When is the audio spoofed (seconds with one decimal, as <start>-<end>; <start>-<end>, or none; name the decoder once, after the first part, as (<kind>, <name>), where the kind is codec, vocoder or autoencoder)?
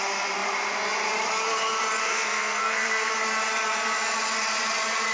2.0-3.1 (codec, SNAC)